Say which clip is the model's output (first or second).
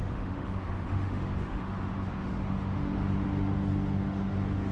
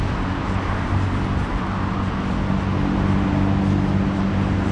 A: first